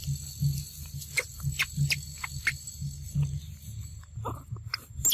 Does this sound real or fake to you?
real